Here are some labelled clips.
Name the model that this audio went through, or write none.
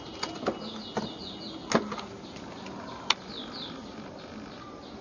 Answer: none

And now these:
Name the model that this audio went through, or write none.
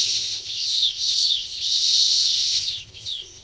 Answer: codec, ZipCodec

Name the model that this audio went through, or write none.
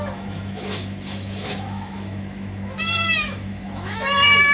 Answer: autoencoder, DAC-VAE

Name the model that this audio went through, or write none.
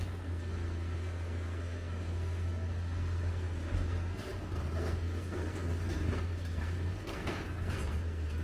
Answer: codec, SNAC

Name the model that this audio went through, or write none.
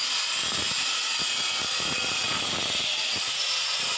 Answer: vocoder, Vocos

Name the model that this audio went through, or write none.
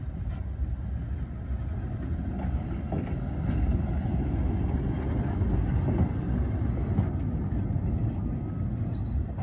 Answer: none